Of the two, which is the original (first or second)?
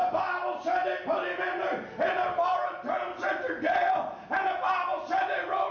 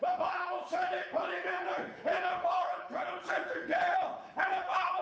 first